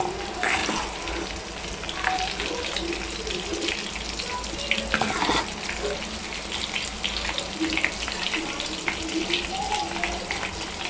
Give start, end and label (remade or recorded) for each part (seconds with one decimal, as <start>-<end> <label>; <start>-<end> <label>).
0.0-10.9 recorded